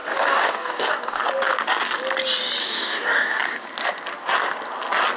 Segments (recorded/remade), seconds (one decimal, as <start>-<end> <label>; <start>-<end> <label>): 0.0-1.2 remade; 1.2-2.6 recorded; 2.6-3.4 remade; 3.4-5.2 recorded